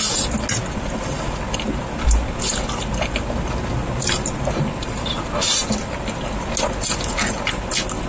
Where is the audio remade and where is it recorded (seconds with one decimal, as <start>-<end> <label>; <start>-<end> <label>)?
0.0-8.1 recorded